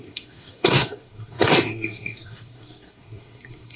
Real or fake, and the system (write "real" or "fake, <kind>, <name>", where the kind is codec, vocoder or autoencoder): fake, codec, SNAC